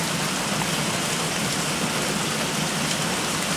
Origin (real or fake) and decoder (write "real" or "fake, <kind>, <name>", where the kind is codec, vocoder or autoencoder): real